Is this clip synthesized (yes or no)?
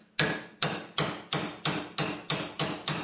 no